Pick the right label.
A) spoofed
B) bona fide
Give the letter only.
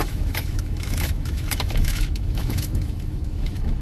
A